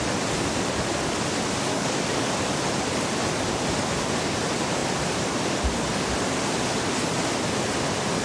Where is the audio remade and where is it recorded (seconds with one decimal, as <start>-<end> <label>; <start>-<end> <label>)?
0.0-1.7 recorded; 1.7-2.3 remade; 2.3-8.2 recorded